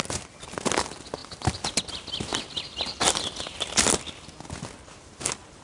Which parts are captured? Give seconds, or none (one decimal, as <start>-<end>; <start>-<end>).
0.0-5.6